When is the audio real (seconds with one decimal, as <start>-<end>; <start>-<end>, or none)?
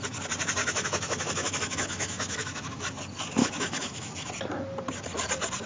0.0-0.6; 2.8-3.4; 4.3-5.7